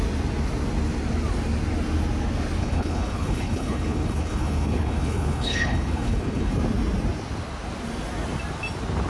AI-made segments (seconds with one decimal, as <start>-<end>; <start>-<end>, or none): 2.6-6.5